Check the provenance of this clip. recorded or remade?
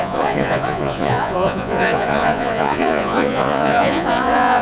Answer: remade